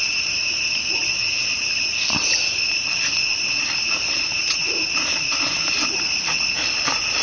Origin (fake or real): fake